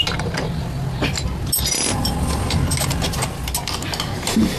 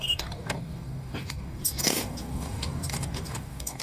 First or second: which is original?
first